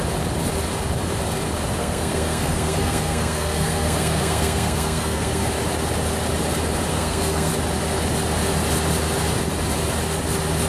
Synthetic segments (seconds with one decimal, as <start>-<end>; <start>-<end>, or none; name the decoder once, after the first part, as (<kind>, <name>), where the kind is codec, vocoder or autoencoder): 1.8-5.5 (codec, SNAC); 6.9-7.5